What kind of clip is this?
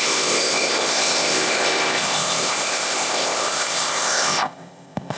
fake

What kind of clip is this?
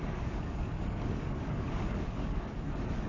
fake